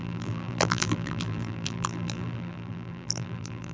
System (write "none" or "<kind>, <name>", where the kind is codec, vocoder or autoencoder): vocoder, BigVGAN v2